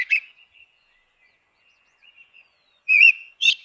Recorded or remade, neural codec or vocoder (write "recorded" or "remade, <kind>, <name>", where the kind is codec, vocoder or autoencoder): remade, vocoder, Vocos